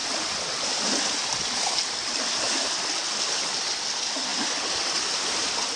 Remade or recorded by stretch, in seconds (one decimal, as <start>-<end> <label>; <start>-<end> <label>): 0.0-5.8 recorded